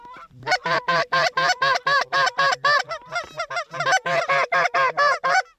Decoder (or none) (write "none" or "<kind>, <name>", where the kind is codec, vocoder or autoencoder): vocoder, BigVGAN v2